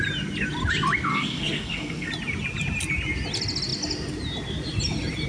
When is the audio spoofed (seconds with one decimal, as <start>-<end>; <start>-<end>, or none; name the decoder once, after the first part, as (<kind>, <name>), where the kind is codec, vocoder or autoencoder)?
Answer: 1.1-2.1 (codec, SNAC)